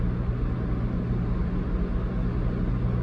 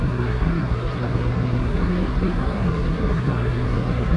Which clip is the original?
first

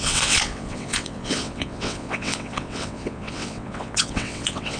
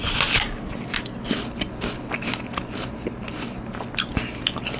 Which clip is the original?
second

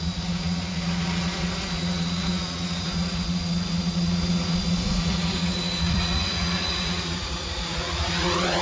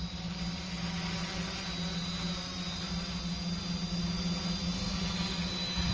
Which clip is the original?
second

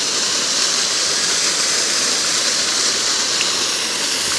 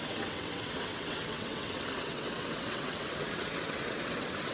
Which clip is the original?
first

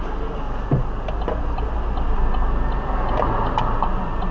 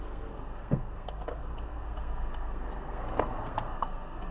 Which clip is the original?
first